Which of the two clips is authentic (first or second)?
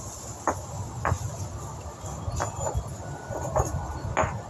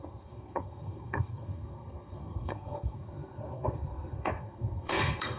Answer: first